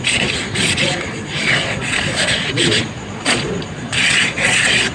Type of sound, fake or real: fake